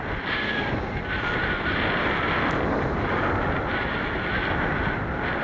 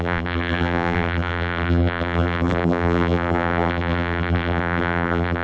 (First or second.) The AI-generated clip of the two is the second